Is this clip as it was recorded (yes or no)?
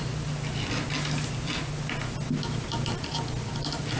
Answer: yes